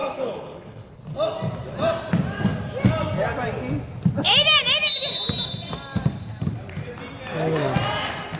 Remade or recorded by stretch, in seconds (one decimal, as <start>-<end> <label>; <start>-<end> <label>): 0.0-1.0 remade; 1.0-8.4 recorded